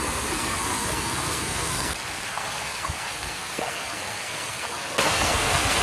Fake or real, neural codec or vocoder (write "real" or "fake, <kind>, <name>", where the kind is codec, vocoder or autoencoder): fake, codec, SNAC